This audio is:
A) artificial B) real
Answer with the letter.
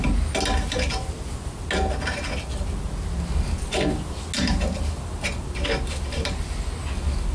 B